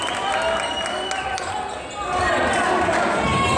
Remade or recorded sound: recorded